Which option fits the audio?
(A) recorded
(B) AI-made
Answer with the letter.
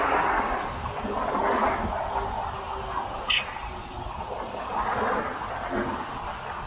A